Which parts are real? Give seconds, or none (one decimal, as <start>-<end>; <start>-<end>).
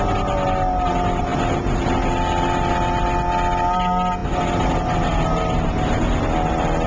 0.0-6.9